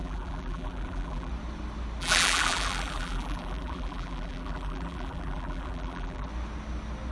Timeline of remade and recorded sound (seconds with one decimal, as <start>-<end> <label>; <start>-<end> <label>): 0.0-1.3 remade; 1.3-2.0 recorded; 2.0-6.3 remade; 6.3-7.1 recorded